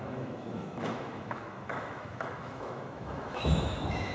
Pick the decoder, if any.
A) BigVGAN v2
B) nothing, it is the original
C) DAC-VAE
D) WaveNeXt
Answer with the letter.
C